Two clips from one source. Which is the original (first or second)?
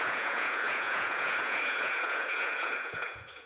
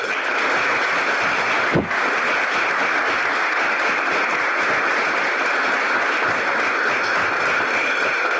second